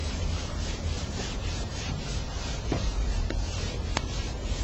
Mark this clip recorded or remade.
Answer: remade